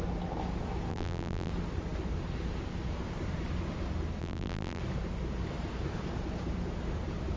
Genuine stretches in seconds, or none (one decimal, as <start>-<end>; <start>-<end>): 0.0-0.9; 1.5-4.2; 4.8-7.4

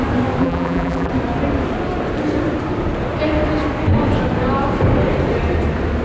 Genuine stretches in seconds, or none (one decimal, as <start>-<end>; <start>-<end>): 0.0-0.4; 1.1-6.0

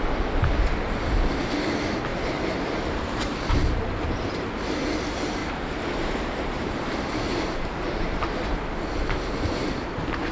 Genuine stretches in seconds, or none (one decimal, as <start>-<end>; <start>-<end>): 0.0-2.1; 4.5-5.4; 8.0-10.3

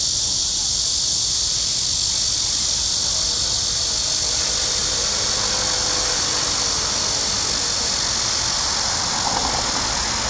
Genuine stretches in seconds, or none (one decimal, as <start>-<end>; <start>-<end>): 0.0-10.3

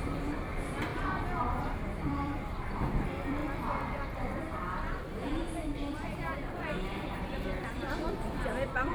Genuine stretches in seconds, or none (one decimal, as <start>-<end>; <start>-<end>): 3.4-4.4